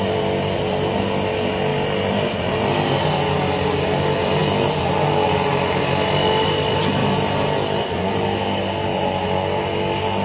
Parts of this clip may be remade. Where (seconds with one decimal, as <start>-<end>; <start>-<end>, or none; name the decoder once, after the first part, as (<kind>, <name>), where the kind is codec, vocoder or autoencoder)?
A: none